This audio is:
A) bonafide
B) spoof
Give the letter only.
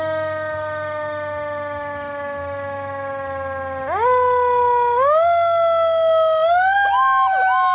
A